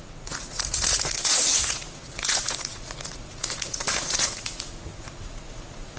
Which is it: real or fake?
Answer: fake